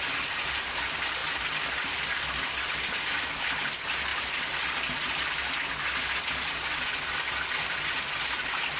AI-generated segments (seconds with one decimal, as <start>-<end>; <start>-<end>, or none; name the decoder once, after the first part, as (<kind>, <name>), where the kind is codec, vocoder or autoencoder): none